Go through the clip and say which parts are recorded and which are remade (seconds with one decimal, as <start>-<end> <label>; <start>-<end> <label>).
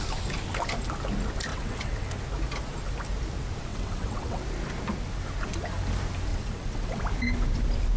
0.0-1.5 recorded; 1.5-2.1 remade; 2.1-3.7 recorded; 3.7-4.4 remade; 4.4-6.3 recorded; 6.3-7.0 remade; 7.0-8.0 recorded